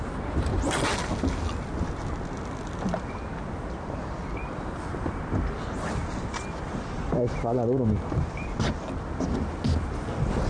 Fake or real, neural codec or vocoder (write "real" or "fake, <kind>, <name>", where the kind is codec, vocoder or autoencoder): real